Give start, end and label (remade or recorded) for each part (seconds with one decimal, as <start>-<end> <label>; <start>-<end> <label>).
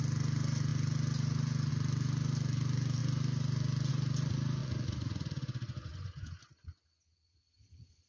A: 0.0-4.6 recorded; 4.6-6.4 remade; 6.4-8.1 recorded